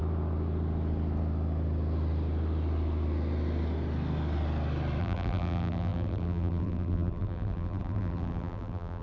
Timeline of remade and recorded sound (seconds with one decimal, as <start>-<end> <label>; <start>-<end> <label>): 0.0-5.0 recorded; 5.0-9.0 remade